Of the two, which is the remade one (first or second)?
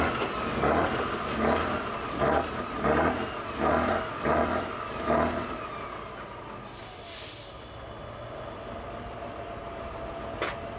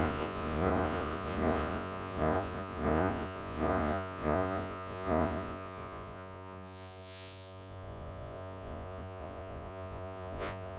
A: second